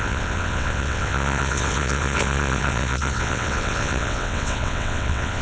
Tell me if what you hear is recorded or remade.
remade